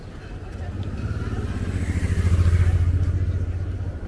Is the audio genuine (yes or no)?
yes